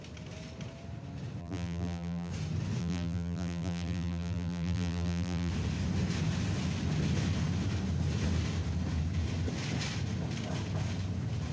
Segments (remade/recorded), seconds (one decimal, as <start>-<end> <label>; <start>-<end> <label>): 0.0-1.4 recorded; 1.4-2.3 remade; 2.3-2.8 recorded; 2.8-5.5 remade; 5.5-11.5 recorded